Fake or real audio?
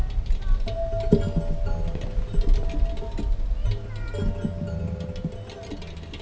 real